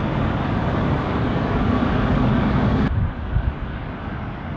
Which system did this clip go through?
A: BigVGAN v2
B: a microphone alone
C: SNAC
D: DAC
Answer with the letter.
D